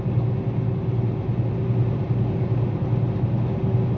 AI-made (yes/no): no